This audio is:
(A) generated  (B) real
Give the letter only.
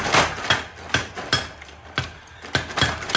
B